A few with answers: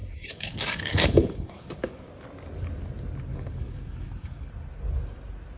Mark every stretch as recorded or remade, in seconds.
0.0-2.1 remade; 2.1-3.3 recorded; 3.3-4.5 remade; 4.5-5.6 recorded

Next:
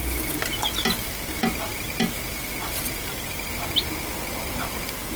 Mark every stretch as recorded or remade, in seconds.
0.0-5.2 recorded

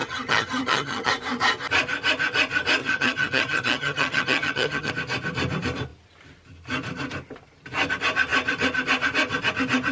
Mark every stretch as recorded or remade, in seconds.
0.0-1.1 remade; 1.1-2.8 recorded; 2.8-4.9 remade; 4.9-9.9 recorded

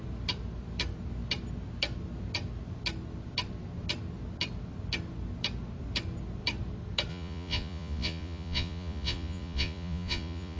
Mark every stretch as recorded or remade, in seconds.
0.0-7.1 recorded; 7.1-10.6 remade

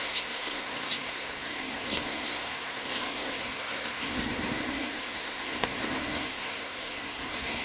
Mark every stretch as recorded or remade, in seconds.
0.0-7.6 remade

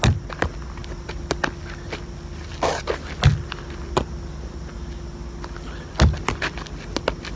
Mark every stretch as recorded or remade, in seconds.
0.0-7.4 recorded

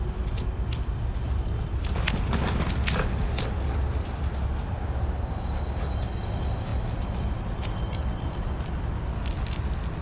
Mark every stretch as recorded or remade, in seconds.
0.0-10.0 recorded

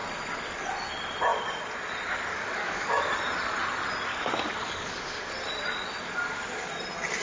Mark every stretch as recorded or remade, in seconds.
0.0-2.3 recorded; 2.3-3.0 remade; 3.0-4.1 recorded; 4.1-5.3 remade; 5.3-7.2 recorded